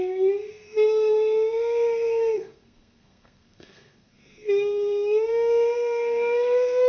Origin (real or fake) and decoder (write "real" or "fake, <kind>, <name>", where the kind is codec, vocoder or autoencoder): fake, codec, SNAC